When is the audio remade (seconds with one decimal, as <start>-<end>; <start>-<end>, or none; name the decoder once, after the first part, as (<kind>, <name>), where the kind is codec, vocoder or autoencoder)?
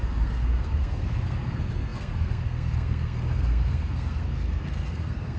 0.0-5.4 (codec, SNAC)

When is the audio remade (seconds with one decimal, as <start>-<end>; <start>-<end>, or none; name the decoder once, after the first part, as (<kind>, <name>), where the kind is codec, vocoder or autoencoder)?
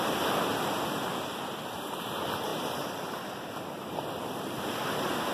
none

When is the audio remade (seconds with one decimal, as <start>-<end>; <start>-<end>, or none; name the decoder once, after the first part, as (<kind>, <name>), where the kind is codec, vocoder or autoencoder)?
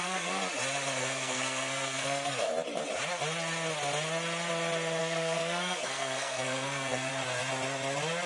0.0-0.4 (codec, SNAC); 1.0-2.5; 5.0-7.1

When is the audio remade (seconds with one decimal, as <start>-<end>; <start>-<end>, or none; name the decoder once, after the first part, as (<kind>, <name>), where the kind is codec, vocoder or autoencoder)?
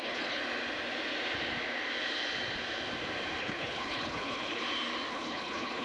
0.0-0.4 (codec, HILCodec); 3.4-4.6; 5.1-5.8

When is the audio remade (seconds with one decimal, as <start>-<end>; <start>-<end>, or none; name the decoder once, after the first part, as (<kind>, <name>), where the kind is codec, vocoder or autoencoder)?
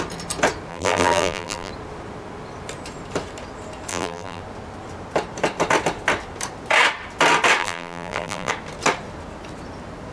0.7-1.7 (vocoder, BigVGAN v2); 3.9-4.4; 7.6-8.5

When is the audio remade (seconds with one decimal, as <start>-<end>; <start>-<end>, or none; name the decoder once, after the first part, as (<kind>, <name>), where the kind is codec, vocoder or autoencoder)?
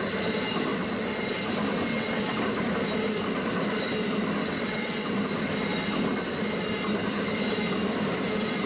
1.9-2.4 (vocoder, WaveNeXt); 4.4-5.2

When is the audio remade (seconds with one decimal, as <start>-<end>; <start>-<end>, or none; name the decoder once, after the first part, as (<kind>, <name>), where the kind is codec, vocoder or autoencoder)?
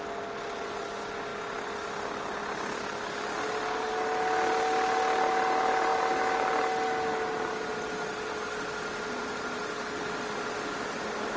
none